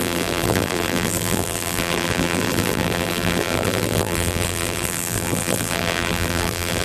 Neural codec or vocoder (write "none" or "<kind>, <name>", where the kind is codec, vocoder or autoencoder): vocoder, BigVGAN v2